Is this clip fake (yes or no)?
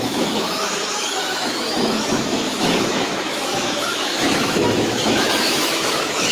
yes